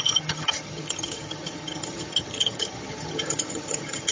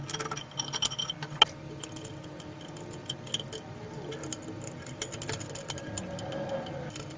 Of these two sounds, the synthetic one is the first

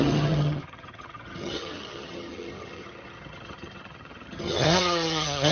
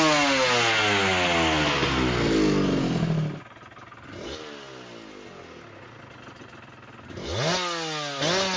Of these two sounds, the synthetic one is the first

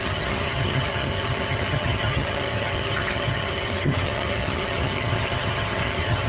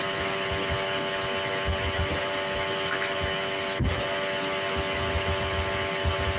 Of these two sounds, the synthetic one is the first